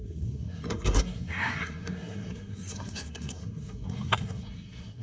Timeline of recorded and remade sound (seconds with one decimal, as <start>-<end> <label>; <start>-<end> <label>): 0.0-5.0 remade